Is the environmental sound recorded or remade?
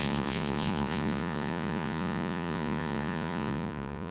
remade